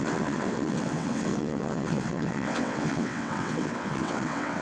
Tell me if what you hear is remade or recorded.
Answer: remade